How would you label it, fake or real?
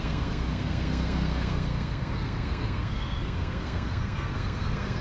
fake